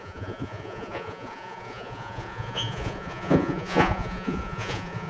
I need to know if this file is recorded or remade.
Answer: remade